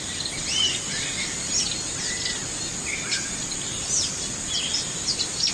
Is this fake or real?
real